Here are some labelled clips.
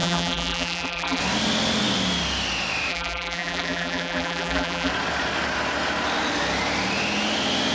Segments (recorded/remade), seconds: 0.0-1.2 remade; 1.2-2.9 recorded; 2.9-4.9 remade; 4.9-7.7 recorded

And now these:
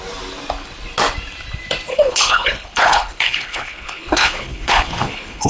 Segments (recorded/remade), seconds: 0.0-1.9 recorded; 1.9-5.5 remade